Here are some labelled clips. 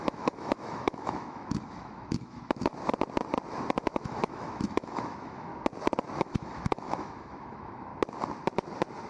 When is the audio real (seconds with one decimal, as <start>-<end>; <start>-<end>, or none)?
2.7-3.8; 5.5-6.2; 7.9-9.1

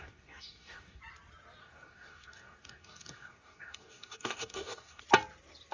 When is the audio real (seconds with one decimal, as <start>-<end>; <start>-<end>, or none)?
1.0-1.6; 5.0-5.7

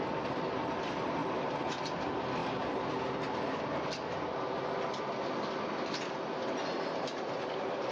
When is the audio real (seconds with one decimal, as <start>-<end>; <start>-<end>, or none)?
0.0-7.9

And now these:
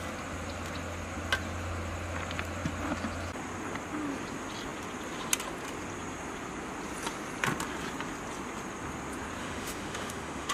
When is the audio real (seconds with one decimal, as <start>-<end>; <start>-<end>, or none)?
0.0-9.4

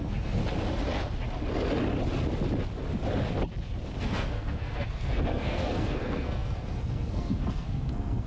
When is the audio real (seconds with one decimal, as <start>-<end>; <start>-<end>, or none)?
0.4-4.0